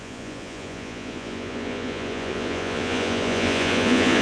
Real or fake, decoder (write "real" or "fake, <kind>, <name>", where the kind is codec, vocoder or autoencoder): fake, vocoder, Vocos